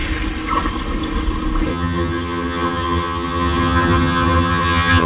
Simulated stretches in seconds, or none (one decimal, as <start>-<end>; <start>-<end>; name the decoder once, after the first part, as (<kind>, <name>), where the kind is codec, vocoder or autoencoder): 1.7-5.1 (vocoder, HiFi-GAN)